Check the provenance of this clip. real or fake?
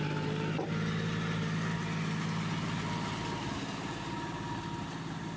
real